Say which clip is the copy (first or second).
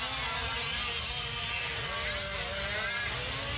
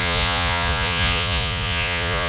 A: second